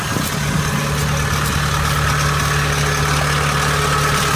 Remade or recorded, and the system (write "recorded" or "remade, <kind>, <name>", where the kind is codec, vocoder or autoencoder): recorded